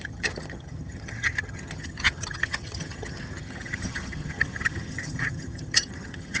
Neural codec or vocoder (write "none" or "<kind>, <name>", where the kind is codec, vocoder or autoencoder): vocoder, HiFi-GAN